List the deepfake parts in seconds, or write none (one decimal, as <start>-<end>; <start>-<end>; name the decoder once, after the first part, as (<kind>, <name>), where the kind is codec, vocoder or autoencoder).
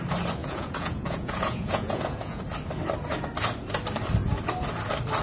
0.4-2.4 (vocoder, Vocos)